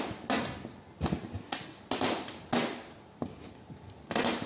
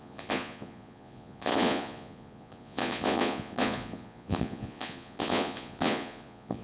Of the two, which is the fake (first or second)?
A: second